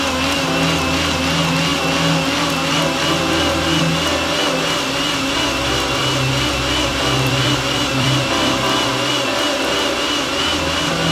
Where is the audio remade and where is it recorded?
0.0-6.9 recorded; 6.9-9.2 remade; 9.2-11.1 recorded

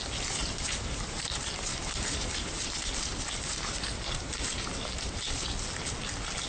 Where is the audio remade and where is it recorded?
0.0-0.4 recorded; 0.4-2.9 remade; 2.9-3.5 recorded; 3.5-4.5 remade; 4.5-6.5 recorded

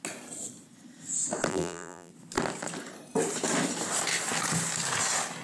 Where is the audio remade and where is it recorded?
0.0-1.5 recorded; 1.5-2.1 remade; 2.1-5.4 recorded

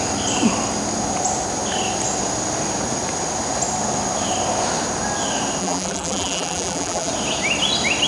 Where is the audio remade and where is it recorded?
0.0-5.6 recorded; 5.6-7.1 remade; 7.1-8.1 recorded

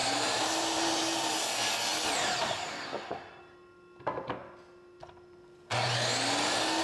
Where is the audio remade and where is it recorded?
0.0-1.5 remade; 1.5-6.8 recorded

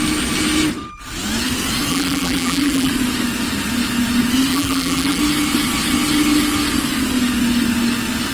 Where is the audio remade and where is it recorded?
0.0-1.9 recorded; 1.9-2.9 remade; 2.9-4.5 recorded; 4.5-5.2 remade; 5.2-8.3 recorded

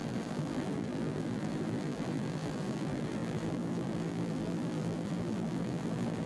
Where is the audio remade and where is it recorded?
0.0-6.3 remade

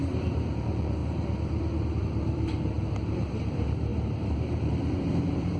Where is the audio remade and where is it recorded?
0.0-1.0 remade; 1.0-2.0 recorded; 2.0-5.6 remade